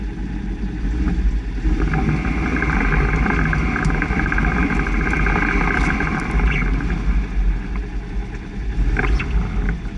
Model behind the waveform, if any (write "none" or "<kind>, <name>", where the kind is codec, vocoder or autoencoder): none